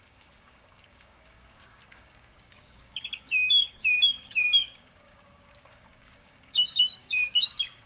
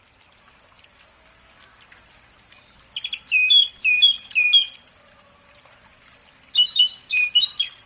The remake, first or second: first